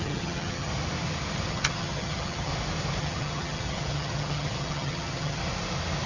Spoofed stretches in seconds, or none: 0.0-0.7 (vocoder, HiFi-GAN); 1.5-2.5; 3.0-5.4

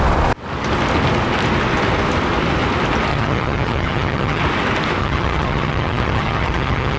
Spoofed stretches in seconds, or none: 3.1-4.4 (vocoder, HiFi-GAN); 5.0-7.0

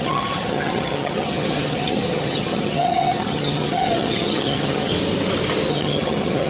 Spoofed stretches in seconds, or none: 0.0-4.9 (vocoder, HiFi-GAN); 5.7-6.5

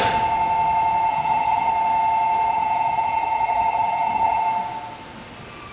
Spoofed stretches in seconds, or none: 1.1-1.7 (vocoder, HiFi-GAN); 2.5-4.4

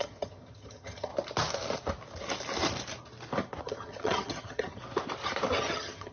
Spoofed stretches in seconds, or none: 0.0-1.1 (vocoder, HiFi-GAN); 3.6-4.8; 5.6-6.1

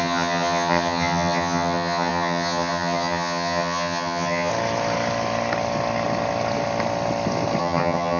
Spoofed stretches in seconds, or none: 0.0-4.5 (vocoder, HiFi-GAN); 7.6-8.2

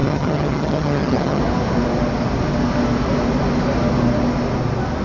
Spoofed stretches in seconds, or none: 0.0-1.4 (vocoder, HiFi-GAN)